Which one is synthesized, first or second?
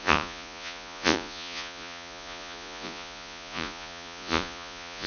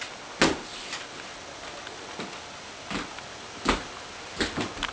first